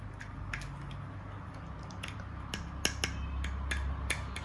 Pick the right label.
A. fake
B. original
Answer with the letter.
B